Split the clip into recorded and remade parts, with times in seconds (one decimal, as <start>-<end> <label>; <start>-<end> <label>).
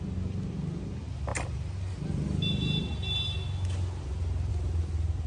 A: 0.0-5.3 recorded